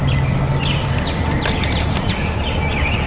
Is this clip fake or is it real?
real